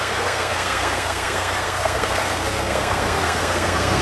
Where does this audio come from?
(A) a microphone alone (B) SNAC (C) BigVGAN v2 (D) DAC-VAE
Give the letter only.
B